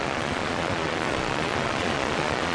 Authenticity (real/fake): fake